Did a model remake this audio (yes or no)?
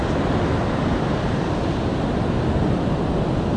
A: no